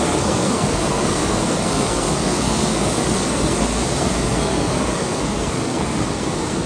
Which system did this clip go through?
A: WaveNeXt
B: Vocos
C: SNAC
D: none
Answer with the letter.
C